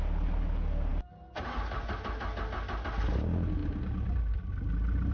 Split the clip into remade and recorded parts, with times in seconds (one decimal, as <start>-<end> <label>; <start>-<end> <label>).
0.0-5.1 recorded